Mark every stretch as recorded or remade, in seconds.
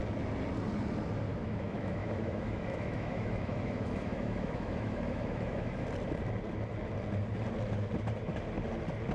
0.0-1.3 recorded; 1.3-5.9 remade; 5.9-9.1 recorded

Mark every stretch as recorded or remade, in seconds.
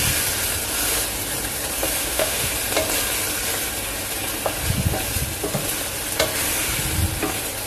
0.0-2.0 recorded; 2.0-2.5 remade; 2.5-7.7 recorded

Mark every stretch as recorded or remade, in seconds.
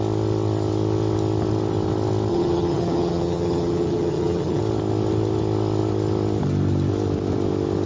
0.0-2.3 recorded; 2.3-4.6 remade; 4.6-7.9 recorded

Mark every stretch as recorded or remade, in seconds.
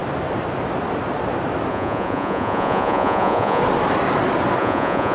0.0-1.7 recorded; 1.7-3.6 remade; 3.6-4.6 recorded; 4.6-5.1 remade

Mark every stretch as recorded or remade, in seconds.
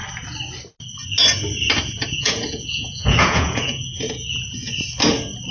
0.0-2.0 recorded; 2.0-4.6 remade; 4.6-5.5 recorded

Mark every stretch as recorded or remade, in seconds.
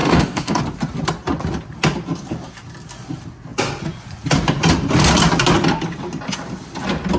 0.0-0.6 remade; 0.6-7.2 recorded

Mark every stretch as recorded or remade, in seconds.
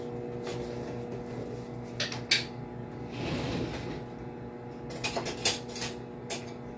0.0-6.8 recorded